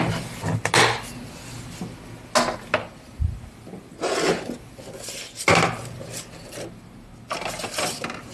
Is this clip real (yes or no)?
yes